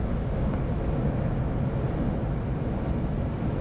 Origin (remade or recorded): recorded